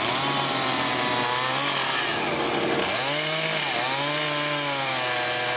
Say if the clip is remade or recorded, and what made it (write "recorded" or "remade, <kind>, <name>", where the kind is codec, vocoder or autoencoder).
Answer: recorded